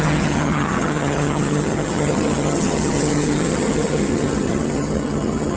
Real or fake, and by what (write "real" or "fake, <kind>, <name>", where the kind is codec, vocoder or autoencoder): fake, vocoder, HiFi-GAN